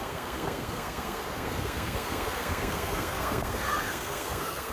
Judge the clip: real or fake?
fake